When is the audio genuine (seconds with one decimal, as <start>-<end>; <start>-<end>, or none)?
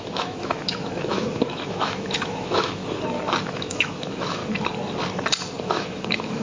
2.8-3.4; 4.4-5.6